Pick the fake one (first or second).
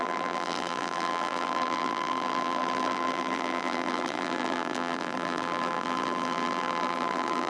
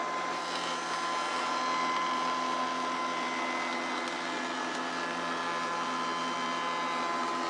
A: first